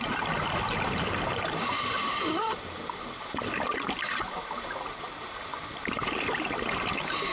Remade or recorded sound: recorded